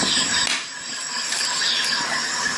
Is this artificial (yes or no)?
no